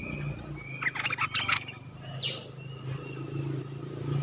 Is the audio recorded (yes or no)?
yes